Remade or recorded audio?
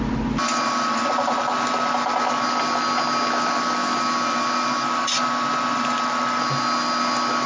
recorded